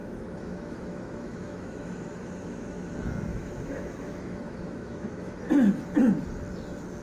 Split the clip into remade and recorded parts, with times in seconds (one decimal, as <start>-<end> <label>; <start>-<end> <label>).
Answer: 0.0-2.9 remade; 2.9-3.3 recorded; 3.3-5.3 remade; 5.3-7.0 recorded